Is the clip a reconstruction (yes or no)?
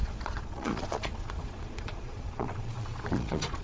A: yes